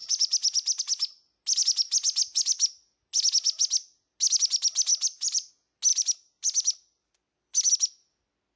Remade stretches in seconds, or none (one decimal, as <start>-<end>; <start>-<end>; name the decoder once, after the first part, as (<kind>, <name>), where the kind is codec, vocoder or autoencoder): 0.0-0.8 (vocoder, BigVGAN v2); 4.9-5.5; 5.9-7.7